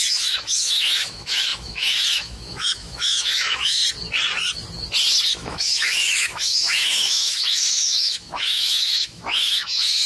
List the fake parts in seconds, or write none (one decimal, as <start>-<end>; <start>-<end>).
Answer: 0.0-3.8; 5.3-10.1